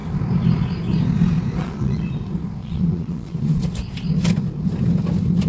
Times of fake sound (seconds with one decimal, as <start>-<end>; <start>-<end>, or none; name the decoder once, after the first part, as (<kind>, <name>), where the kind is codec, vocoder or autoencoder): 1.6-2.1 (vocoder, Vocos); 2.6-3.7